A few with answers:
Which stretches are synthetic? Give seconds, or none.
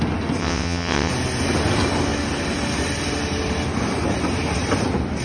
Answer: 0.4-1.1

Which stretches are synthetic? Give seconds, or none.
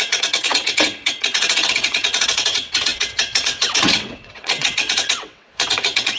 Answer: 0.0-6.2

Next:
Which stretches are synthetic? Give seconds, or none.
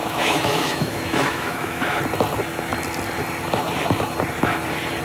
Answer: 0.0-2.0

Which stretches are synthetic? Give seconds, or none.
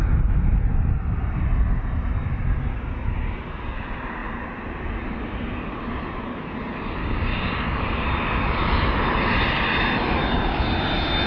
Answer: 7.0-7.8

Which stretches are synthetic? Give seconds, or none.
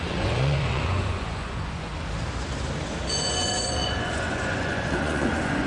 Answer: 0.0-1.9; 3.1-5.7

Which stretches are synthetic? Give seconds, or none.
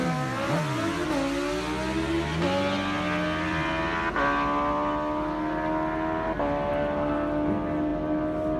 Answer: none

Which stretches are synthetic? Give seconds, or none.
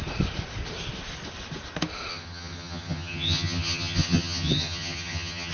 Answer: 2.1-5.5